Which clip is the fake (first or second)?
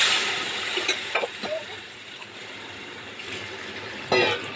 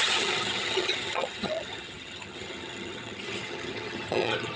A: second